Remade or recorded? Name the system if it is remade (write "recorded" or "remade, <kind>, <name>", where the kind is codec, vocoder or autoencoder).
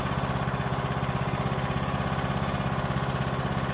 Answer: recorded